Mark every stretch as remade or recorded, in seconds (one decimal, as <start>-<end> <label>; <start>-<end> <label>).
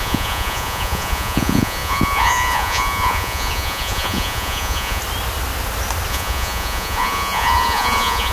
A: 0.0-5.0 remade; 5.0-6.1 recorded; 6.1-8.3 remade